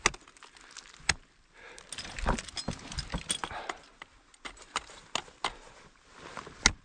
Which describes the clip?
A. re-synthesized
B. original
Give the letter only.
B